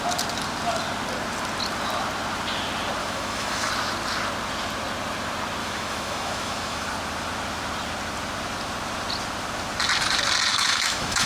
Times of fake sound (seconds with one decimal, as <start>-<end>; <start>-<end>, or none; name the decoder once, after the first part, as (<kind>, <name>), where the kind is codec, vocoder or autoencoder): 3.0-3.7 (autoencoder, DAC-VAE); 5.6-6.9; 10.5-11.3